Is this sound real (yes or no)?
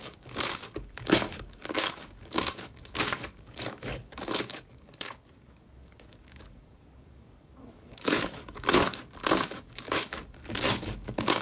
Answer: no